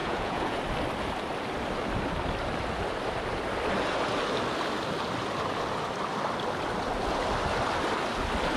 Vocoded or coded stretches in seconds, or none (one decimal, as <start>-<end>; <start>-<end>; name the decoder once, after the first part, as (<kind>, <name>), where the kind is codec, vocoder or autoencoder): 0.0-0.6 (vocoder, Vocos)